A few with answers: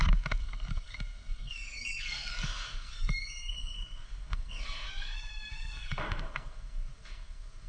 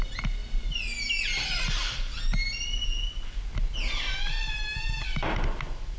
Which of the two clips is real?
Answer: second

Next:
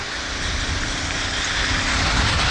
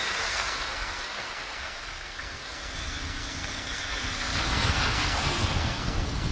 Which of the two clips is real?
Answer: first